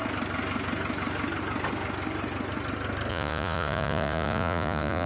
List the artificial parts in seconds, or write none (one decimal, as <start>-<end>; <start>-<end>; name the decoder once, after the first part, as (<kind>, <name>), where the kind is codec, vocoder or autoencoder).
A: 3.1-5.1 (vocoder, Vocos)